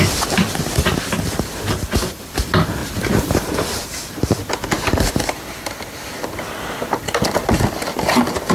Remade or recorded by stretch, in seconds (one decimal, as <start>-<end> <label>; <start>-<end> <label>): 0.0-8.5 recorded